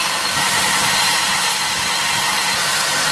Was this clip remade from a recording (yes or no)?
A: no